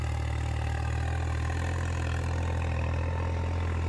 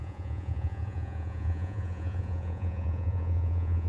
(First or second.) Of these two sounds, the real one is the first